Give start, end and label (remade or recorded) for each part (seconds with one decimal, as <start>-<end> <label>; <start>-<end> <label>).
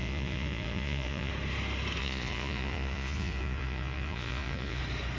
0.0-1.3 remade; 1.3-2.0 recorded; 2.0-4.8 remade; 4.8-5.2 recorded